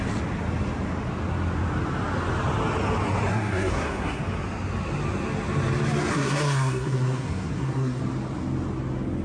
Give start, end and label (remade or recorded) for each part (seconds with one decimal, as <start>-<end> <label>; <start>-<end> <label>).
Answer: 0.0-3.3 recorded; 3.3-4.2 remade; 4.2-6.1 recorded; 6.1-8.0 remade; 8.0-9.2 recorded